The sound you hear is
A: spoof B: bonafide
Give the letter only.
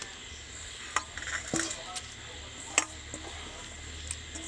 B